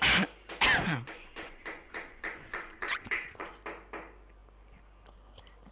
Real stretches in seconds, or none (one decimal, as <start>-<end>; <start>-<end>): 0.0-0.9; 3.5-5.7